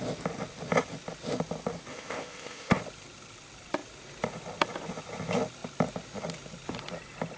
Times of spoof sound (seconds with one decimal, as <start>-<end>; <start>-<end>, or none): 1.9-2.8

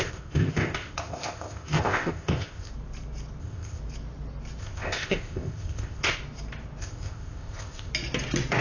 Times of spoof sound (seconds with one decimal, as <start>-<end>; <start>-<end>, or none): 0.0-2.7; 3.4-3.8; 4.6-6.2; 6.8-7.9

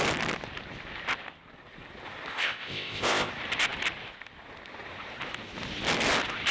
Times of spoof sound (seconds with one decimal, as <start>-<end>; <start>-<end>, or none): 2.3-3.3

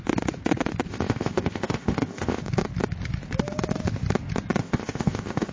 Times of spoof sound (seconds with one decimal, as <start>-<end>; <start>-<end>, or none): 0.9-2.4; 4.6-5.5